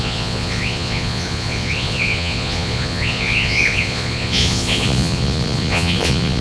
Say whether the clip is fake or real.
fake